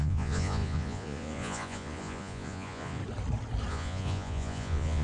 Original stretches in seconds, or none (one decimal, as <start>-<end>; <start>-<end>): 3.0-3.7